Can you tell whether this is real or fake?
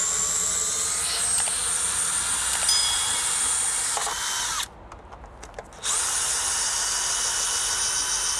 real